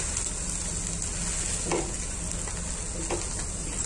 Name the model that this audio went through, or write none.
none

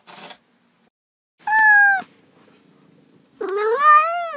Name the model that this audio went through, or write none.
none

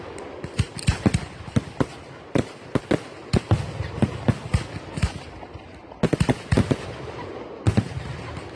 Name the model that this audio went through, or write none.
none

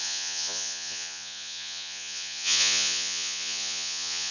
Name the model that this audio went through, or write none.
vocoder, Vocos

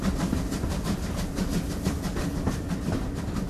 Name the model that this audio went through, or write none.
none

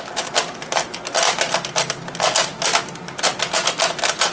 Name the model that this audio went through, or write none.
none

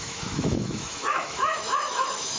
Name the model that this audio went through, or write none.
autoencoder, DAC-VAE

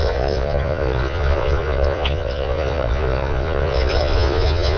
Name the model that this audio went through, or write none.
vocoder, Vocos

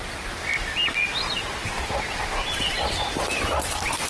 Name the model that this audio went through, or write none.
none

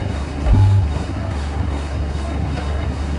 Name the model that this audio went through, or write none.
codec, SNAC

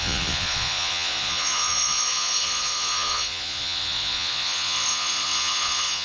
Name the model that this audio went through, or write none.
vocoder, Vocos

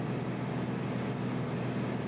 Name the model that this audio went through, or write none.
none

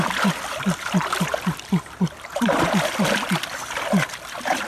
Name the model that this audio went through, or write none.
none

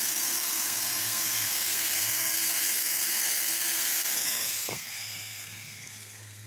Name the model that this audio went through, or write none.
codec, SNAC